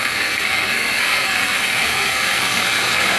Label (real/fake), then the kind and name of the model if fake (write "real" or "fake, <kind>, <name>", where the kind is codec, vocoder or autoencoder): fake, codec, SNAC